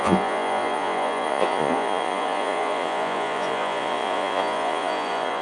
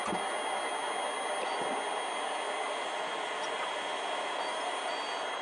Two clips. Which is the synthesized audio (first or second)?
first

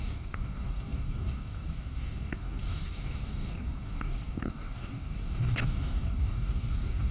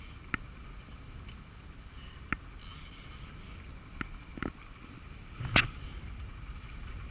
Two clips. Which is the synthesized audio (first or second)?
first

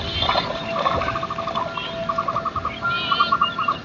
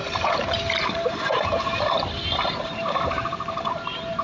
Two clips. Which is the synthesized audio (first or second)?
second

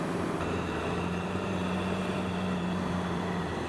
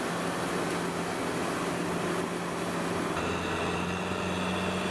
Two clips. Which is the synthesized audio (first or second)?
first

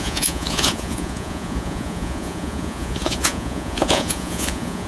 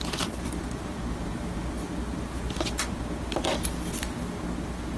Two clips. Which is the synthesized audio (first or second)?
first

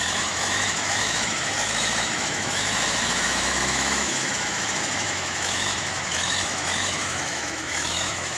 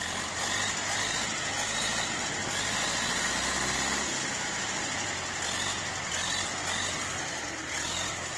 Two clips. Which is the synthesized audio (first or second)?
first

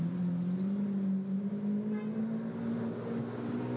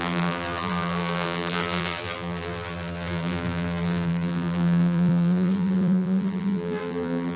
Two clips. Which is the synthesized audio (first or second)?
second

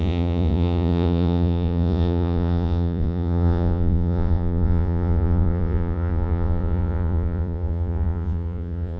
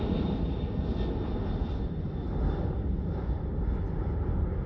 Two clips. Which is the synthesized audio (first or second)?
first